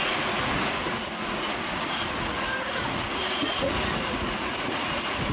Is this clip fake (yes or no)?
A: yes